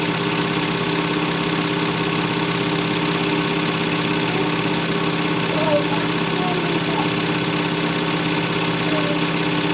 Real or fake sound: real